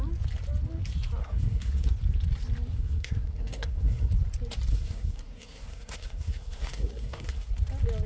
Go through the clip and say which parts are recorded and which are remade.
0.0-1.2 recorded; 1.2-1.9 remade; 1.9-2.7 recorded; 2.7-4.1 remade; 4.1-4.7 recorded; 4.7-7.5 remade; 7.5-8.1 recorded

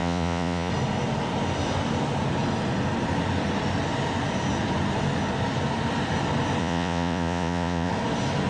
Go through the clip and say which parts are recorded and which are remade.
0.0-0.7 remade; 0.7-6.6 recorded; 6.6-7.9 remade; 7.9-8.5 recorded

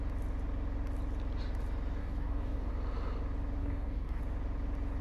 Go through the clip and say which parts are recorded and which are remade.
0.0-2.0 recorded; 2.0-2.7 remade; 2.7-3.6 recorded; 3.6-4.2 remade; 4.2-5.0 recorded

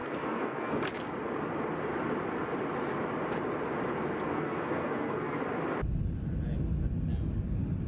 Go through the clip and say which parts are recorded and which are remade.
0.0-0.8 remade; 0.8-4.3 recorded; 4.3-5.4 remade; 5.4-7.9 recorded